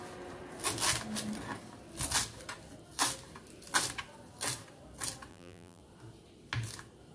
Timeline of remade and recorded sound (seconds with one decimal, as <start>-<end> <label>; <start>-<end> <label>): 0.0-5.3 recorded; 5.3-5.8 remade; 5.8-7.1 recorded